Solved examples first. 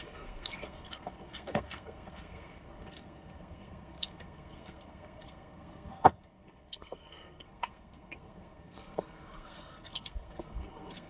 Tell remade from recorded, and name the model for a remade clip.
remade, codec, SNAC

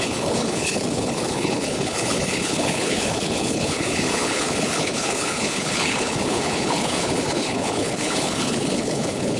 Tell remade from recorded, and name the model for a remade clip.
remade, codec, HILCodec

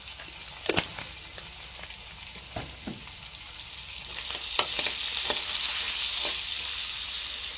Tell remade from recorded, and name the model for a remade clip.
recorded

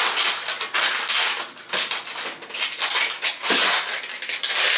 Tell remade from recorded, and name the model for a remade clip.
recorded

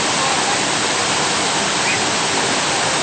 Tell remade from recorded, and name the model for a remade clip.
recorded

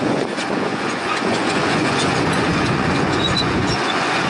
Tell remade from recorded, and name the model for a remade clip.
remade, vocoder, Vocos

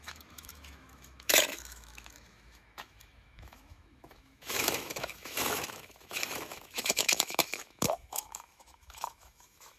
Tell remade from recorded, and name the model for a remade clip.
remade, autoencoder, DAC-VAE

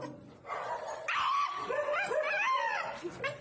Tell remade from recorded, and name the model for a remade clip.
recorded